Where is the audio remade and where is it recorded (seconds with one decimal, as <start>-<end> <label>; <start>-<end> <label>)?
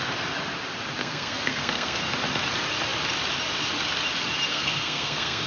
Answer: 0.0-1.0 recorded; 1.0-2.0 remade; 2.0-4.5 recorded; 4.5-5.5 remade